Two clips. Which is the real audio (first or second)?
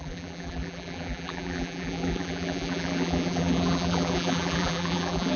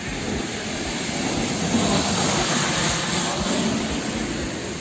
second